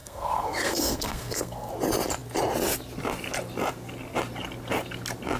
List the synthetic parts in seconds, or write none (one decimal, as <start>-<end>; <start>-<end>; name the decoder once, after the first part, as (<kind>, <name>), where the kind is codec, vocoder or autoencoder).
0.0-1.7 (codec, SNAC)